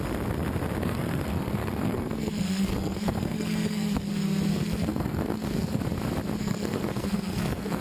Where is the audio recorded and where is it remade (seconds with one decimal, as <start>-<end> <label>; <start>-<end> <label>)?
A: 0.0-0.8 recorded; 0.8-4.1 remade; 4.1-4.5 recorded; 4.5-5.8 remade; 5.8-6.4 recorded; 6.4-7.8 remade